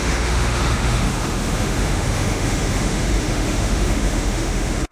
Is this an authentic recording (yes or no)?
no